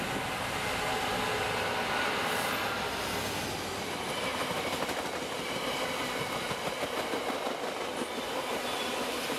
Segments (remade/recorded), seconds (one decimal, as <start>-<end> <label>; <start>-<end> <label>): 0.0-9.4 recorded